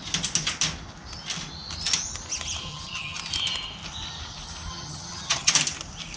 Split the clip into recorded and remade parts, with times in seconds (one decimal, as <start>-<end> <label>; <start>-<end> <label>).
0.0-2.7 recorded; 2.7-3.2 remade; 3.2-4.7 recorded; 4.7-5.5 remade; 5.5-6.2 recorded

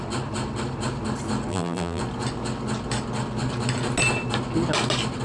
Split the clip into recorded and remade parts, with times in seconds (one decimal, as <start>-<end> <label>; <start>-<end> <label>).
0.0-1.5 recorded; 1.5-2.0 remade; 2.0-5.2 recorded

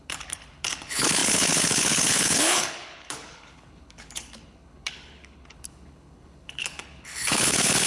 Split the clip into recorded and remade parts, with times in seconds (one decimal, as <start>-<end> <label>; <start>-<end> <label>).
0.0-7.9 remade